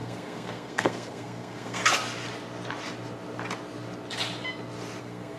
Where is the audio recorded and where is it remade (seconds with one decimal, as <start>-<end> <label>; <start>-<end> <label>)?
0.0-1.8 remade; 1.8-5.0 recorded; 5.0-5.4 remade